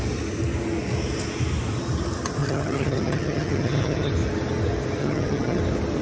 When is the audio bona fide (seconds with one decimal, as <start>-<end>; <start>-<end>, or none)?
0.0-2.4; 4.1-5.0; 5.6-6.0